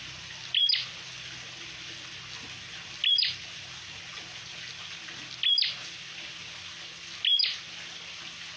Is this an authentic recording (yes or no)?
yes